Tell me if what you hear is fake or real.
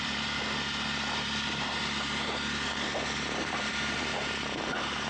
fake